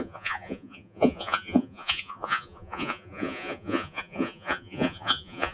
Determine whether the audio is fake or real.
fake